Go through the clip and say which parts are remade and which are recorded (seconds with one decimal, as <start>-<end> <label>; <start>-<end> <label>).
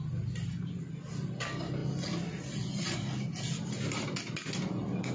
0.0-5.1 recorded